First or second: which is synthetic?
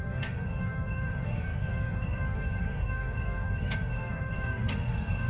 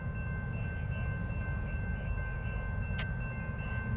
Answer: first